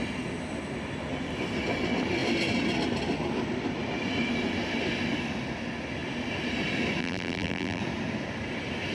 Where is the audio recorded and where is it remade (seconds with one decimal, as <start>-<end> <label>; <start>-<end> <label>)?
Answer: 0.0-7.0 recorded; 7.0-7.8 remade; 7.8-8.9 recorded